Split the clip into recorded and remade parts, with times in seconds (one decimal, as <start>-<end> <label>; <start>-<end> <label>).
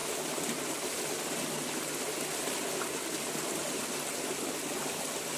0.0-5.4 recorded